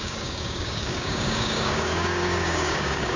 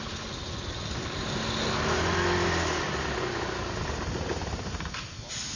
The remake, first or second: first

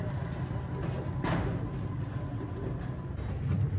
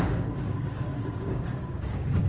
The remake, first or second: second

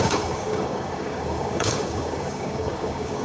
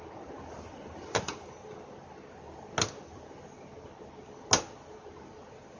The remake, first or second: first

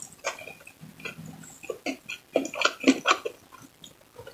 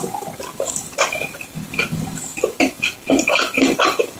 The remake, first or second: second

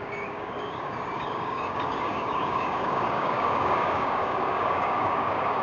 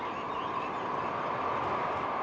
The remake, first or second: first